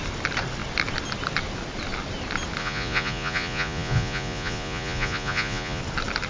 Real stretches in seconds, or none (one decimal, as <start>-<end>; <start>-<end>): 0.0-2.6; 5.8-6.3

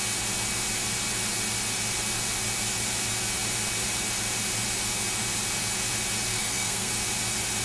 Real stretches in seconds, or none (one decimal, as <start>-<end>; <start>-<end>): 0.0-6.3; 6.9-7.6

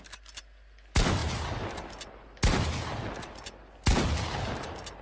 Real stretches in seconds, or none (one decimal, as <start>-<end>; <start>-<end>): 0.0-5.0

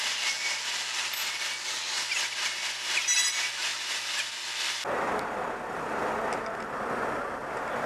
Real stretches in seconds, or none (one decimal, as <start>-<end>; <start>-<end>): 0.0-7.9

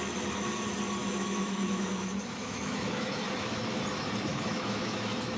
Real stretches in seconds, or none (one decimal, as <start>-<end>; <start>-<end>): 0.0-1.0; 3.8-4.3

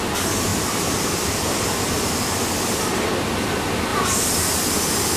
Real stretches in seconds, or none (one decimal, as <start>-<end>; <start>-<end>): 0.0-0.5; 2.2-3.9; 4.6-5.2